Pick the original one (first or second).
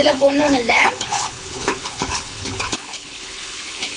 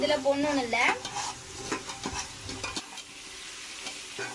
second